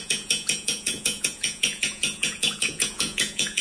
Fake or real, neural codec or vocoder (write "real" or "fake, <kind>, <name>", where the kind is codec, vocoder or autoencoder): fake, vocoder, Vocos